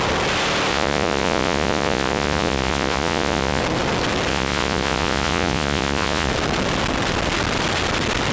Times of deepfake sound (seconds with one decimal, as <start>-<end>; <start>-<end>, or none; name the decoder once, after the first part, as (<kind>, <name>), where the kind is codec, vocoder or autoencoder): 0.7-3.6 (vocoder, Vocos); 4.3-6.3

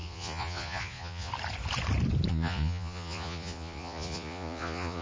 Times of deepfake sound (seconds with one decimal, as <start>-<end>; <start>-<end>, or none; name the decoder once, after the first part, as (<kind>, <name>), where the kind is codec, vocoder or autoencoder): 0.0-1.3 (vocoder, Vocos); 2.3-5.0

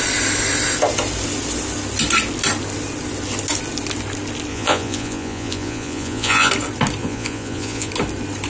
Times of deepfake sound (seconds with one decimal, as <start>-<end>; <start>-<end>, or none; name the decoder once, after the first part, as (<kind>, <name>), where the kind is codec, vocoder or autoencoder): 4.5-6.5 (vocoder, Vocos); 7.0-7.9

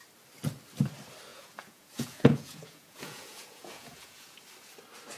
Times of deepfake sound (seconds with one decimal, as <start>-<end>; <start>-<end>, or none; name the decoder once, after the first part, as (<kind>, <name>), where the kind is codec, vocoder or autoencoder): 1.3-4.4 (vocoder, Vocos)